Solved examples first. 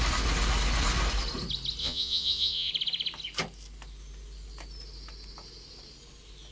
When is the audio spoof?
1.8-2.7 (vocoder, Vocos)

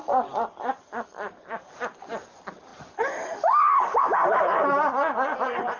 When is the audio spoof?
none

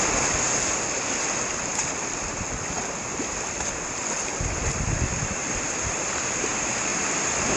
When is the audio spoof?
1.7-6.2 (vocoder, BigVGAN v2); 6.9-7.6

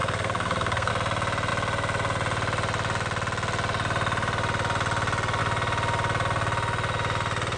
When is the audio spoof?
0.0-0.9 (codec, SNAC)

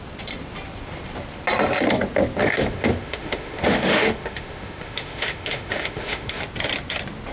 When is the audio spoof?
2.4-6.4 (autoencoder, DAC-VAE)

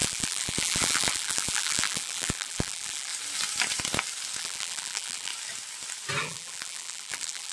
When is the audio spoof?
0.0-3.1 (vocoder, BigVGAN v2); 4.4-5.3; 6.2-7.5

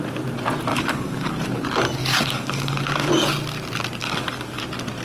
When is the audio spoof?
0.7-1.3 (codec, DAC); 2.0-3.1; 4.0-4.6